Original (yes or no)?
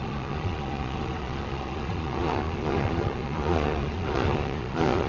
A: no